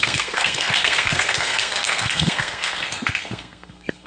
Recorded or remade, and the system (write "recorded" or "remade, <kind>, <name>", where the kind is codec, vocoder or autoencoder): remade, codec, SNAC